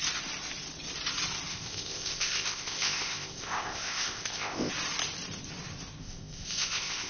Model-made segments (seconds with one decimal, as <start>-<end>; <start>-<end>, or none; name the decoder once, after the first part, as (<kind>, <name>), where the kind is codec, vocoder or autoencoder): 1.5-4.7 (codec, ZipCodec); 6.0-7.1